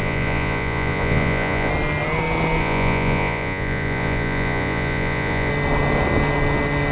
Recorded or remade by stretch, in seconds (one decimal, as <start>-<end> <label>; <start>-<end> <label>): 0.0-1.7 remade; 1.7-2.6 recorded; 2.6-5.5 remade; 5.5-6.9 recorded